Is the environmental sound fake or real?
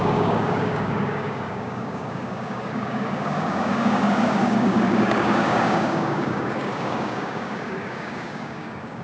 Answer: fake